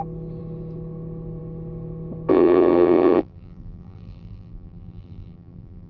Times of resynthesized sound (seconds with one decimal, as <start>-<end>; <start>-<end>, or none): 2.3-5.9